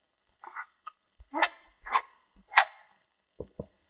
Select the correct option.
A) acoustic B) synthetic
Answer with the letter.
B